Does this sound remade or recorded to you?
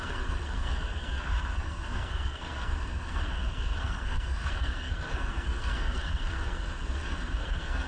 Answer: remade